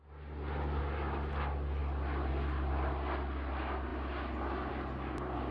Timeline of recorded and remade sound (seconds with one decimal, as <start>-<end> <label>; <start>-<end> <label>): 0.0-5.5 recorded